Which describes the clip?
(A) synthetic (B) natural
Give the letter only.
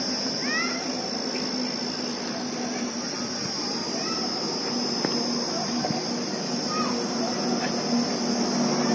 B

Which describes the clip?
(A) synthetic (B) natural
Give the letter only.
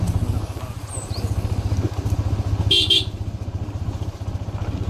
B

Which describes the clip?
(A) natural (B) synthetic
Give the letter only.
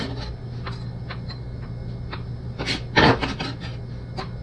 A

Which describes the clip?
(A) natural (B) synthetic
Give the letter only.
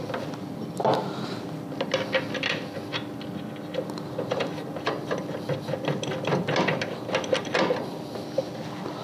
A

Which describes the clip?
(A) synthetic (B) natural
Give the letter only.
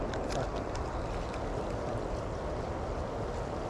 B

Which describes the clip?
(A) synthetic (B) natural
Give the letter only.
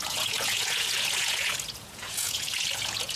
A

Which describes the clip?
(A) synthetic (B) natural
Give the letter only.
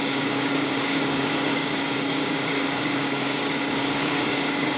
A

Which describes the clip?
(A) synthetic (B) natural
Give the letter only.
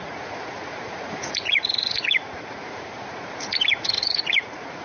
A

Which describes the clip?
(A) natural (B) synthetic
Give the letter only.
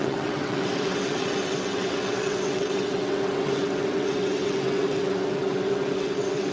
B